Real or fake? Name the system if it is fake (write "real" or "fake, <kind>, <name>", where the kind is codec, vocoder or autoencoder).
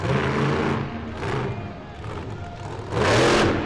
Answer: real